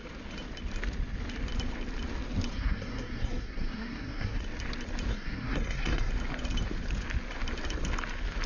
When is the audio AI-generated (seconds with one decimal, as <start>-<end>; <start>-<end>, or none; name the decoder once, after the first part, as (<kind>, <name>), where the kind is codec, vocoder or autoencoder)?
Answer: 2.5-4.4 (codec, SNAC); 5.1-6.1